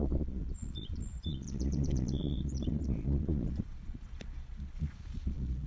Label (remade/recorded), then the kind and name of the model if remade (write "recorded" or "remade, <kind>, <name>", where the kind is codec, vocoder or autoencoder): remade, vocoder, Vocos